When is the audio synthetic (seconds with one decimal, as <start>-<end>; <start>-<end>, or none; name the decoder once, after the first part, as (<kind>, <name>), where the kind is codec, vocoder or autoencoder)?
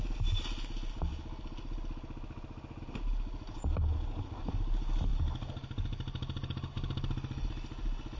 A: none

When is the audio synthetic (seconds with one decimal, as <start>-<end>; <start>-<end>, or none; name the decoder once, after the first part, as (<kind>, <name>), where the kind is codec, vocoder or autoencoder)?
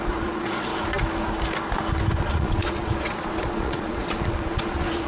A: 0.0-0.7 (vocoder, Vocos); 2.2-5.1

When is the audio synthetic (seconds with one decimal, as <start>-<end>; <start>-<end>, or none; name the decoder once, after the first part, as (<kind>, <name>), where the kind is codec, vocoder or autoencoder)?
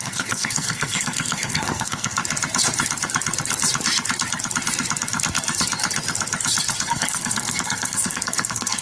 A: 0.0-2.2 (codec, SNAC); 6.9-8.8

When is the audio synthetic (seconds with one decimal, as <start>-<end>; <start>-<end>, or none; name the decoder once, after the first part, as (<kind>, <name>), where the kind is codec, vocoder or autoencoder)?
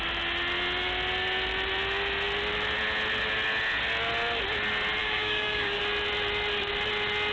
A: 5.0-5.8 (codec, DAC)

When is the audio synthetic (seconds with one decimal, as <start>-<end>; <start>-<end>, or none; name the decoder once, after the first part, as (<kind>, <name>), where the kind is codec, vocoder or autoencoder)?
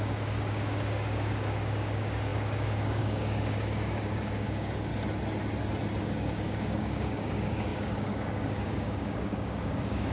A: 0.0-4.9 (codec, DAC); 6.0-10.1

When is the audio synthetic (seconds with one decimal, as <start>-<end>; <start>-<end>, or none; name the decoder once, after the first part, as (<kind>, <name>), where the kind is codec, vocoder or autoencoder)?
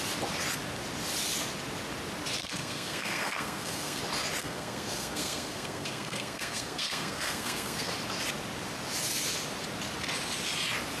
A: 2.4-4.0 (codec, SNAC); 4.4-7.9